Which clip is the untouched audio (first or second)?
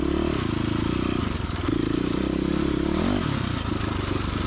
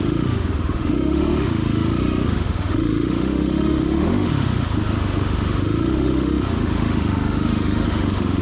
first